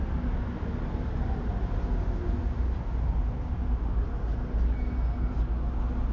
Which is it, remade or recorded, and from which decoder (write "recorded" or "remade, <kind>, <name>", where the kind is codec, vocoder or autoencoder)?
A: recorded